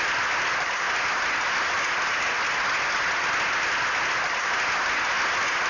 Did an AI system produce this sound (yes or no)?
no